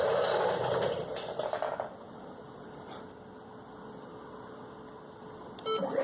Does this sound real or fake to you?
real